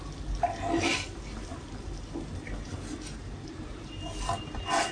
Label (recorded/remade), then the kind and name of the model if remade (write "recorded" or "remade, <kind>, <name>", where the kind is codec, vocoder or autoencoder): recorded